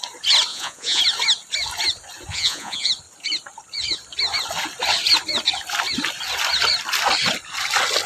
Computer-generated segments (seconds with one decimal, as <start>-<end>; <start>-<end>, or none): 0.5-1.0; 2.3-2.9